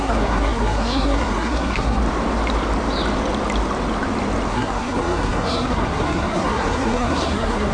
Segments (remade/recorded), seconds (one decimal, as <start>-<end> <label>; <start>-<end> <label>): 0.0-2.0 remade; 2.0-4.5 recorded; 4.5-7.7 remade